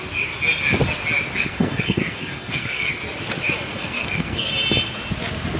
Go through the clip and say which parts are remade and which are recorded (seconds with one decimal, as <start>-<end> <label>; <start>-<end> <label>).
0.0-1.3 recorded; 1.3-2.9 remade; 2.9-3.7 recorded; 3.7-4.5 remade; 4.5-5.6 recorded